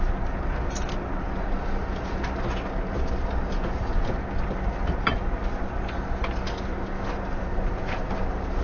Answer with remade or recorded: recorded